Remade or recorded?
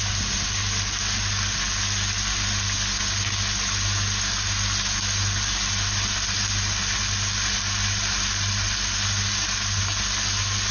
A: recorded